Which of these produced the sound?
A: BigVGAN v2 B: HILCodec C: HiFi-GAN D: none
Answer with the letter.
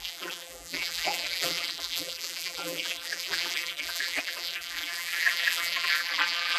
A